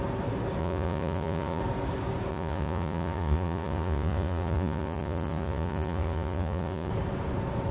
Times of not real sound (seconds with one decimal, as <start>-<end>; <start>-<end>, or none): 0.6-1.6; 2.3-6.9

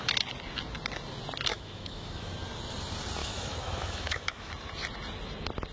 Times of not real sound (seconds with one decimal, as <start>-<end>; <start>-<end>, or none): 1.5-2.3; 3.2-4.5

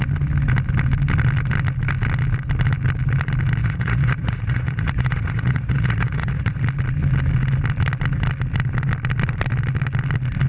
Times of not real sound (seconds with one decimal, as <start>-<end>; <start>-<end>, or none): 3.6-6.6

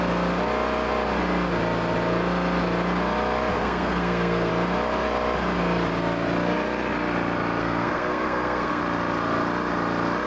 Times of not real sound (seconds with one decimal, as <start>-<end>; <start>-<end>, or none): 3.5-4.5; 7.6-8.8